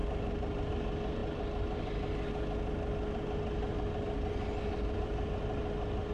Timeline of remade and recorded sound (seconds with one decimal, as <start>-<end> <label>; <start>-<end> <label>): 0.0-6.1 recorded